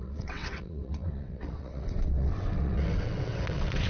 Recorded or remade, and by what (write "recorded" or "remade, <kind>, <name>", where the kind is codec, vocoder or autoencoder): remade, vocoder, WaveNeXt